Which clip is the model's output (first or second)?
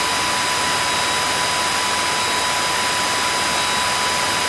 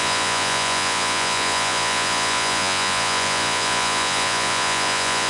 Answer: second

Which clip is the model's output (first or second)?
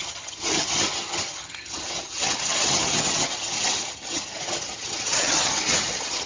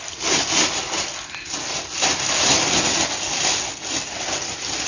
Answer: first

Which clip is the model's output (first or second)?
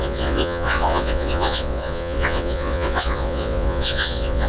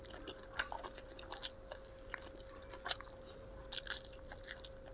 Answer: first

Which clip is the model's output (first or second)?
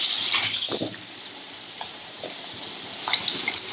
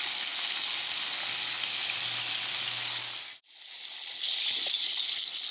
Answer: first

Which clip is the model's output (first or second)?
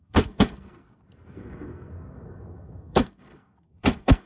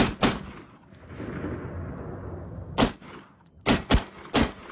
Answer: first